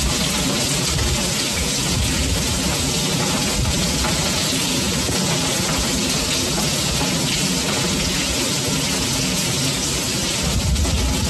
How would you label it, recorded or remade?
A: recorded